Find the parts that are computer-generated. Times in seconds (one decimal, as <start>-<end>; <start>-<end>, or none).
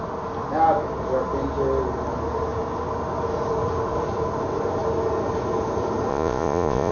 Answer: 6.1-6.9